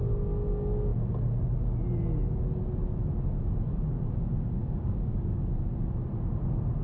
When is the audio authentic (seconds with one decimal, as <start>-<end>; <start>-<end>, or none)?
0.0-4.6; 5.5-6.8